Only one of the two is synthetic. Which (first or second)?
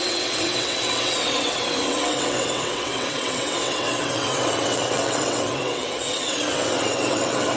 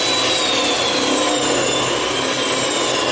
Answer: first